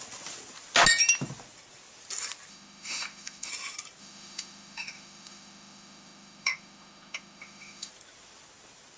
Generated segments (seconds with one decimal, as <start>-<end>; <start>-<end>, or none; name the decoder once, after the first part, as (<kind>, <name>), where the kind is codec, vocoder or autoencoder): 2.5-3.5 (autoencoder, DAC-VAE); 4.0-7.9